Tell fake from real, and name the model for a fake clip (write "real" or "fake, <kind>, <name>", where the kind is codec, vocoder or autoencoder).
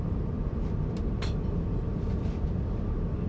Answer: real